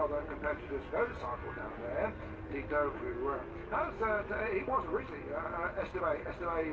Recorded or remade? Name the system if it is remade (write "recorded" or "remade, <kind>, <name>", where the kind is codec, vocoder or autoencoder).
recorded